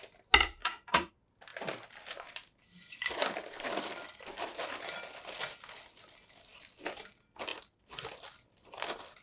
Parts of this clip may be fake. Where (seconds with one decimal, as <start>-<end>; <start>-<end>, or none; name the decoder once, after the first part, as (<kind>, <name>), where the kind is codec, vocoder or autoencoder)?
0.6-1.1 (vocoder, Vocos)